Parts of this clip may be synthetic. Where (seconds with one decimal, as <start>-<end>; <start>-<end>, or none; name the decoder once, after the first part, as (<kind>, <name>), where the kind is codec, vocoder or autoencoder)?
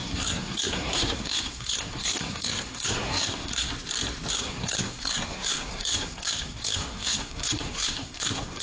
0.0-3.7 (codec, SNAC); 4.3-8.6